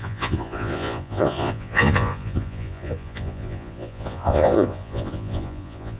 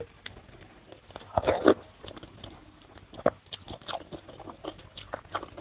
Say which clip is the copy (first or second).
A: first